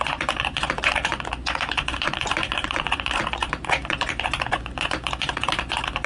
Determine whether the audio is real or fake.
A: fake